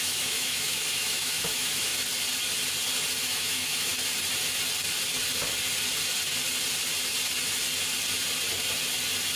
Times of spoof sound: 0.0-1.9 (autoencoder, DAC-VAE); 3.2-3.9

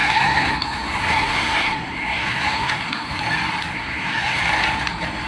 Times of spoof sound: 0.0-3.2 (codec, SNAC); 3.7-4.4

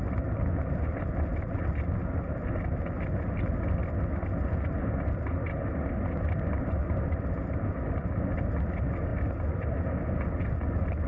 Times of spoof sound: none

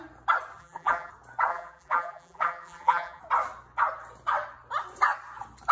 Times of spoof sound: 0.6-1.1 (vocoder, BigVGAN v2); 1.5-3.2

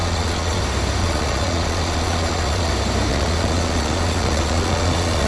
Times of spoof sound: 0.0-0.6 (vocoder, Vocos); 1.0-2.7; 3.1-5.3

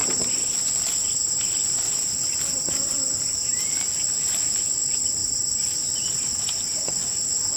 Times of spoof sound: none